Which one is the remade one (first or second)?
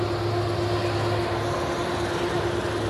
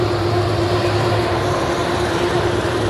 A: second